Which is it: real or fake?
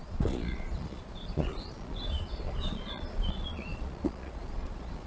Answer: fake